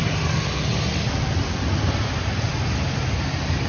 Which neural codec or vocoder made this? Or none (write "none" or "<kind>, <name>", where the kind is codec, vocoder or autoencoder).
none